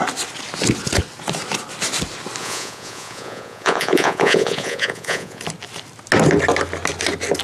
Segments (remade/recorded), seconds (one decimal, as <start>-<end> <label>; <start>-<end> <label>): 0.0-2.4 recorded; 2.4-5.4 remade; 5.4-7.4 recorded